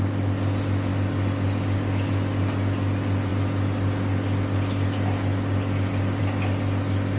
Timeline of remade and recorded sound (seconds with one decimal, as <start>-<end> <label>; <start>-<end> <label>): 0.0-7.2 recorded

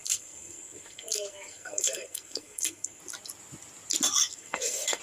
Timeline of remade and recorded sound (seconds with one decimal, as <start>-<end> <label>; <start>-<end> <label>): 0.0-3.0 remade; 3.0-4.2 recorded; 4.2-5.0 remade

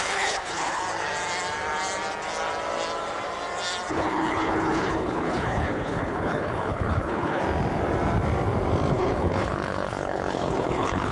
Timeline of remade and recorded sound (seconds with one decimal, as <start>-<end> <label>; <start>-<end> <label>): 0.0-0.8 remade; 0.8-3.9 recorded; 3.9-7.4 remade; 7.4-8.9 recorded; 8.9-11.1 remade

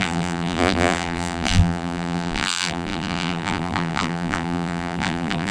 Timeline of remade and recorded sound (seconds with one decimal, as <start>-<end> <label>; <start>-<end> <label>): 0.0-5.5 remade

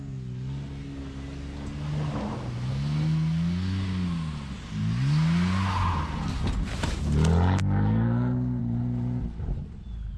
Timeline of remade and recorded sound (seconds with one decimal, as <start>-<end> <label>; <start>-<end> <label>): 0.0-7.6 recorded; 7.6-8.6 remade; 8.6-10.2 recorded